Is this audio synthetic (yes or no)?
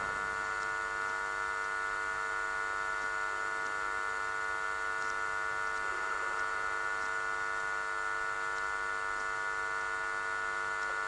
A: no